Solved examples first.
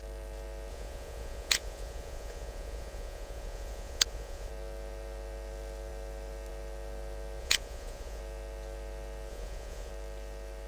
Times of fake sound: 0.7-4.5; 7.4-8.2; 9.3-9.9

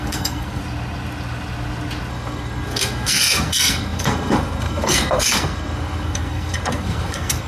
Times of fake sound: 0.0-0.6; 2.1-7.5

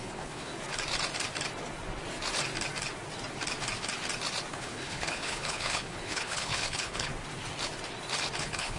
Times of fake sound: 0.0-0.5; 4.5-7.1; 8.4-8.8

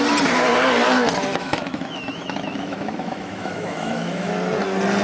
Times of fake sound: 1.3-4.3